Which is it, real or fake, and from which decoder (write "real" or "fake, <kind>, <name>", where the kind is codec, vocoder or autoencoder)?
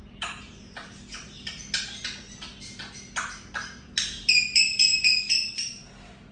real